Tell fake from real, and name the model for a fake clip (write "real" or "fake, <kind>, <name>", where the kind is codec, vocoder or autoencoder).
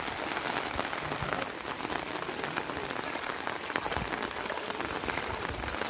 real